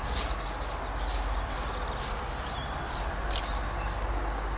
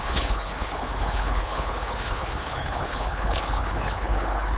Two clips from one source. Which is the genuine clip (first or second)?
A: first